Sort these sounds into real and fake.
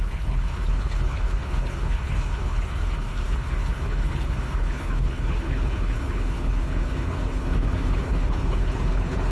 fake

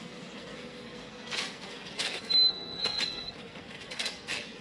fake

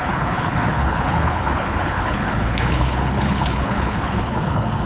fake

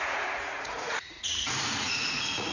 fake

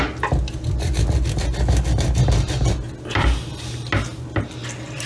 real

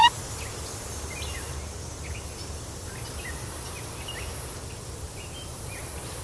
real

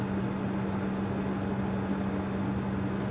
real